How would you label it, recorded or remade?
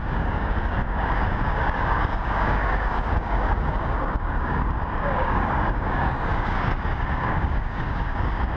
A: remade